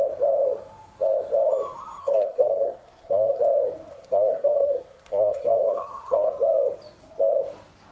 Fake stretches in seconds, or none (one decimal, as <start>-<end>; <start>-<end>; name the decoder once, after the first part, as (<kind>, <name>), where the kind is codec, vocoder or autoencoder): 2.0-3.4 (codec, SNAC); 3.9-6.3